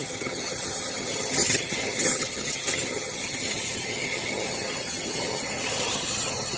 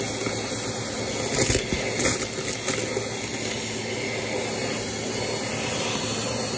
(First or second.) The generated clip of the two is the first